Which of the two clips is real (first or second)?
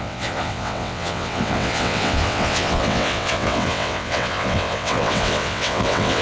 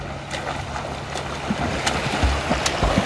second